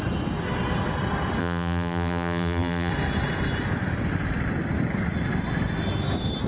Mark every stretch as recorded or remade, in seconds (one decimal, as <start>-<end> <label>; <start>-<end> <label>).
0.0-1.4 recorded; 1.4-2.9 remade; 2.9-6.5 recorded